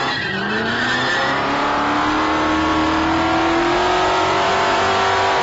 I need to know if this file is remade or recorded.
recorded